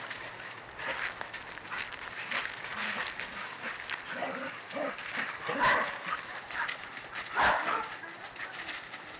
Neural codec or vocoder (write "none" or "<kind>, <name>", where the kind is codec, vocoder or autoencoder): none